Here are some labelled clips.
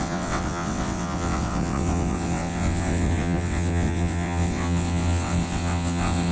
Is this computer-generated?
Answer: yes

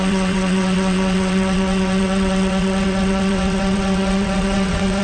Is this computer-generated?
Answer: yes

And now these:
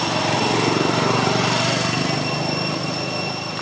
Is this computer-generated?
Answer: no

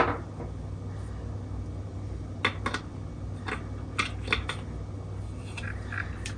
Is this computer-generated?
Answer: no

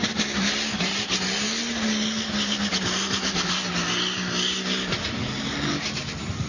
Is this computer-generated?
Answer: no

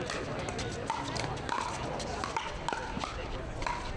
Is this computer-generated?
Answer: no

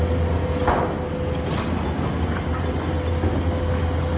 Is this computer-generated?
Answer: no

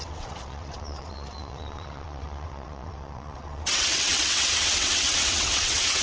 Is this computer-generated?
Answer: yes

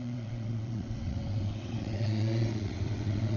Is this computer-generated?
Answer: yes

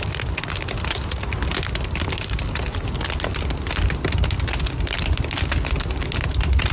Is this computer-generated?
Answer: no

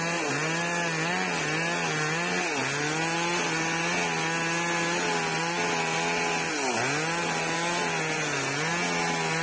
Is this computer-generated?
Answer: no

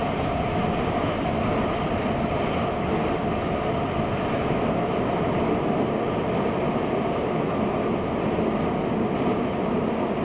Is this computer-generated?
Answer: no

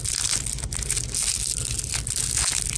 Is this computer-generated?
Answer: no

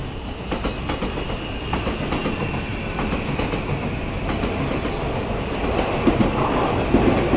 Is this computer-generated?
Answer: no